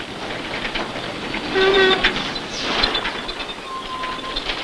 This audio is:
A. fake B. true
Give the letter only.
B